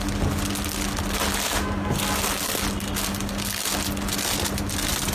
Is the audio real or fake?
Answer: real